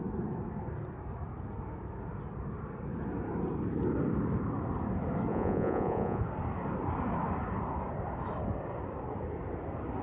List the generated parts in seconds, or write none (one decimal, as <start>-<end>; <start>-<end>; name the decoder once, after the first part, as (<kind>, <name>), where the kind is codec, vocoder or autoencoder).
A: 5.3-6.2 (vocoder, Vocos)